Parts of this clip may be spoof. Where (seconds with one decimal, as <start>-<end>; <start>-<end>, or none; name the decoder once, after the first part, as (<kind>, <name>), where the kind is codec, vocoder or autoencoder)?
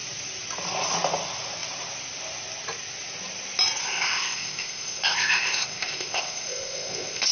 3.8-7.3 (codec, ZipCodec)